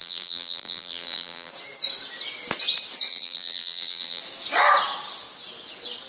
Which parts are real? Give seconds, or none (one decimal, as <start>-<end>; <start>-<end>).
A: 1.5-3.1; 4.2-6.1

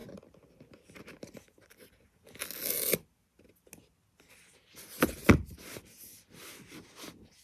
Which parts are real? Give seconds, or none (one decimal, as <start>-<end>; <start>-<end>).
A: 1.9-5.2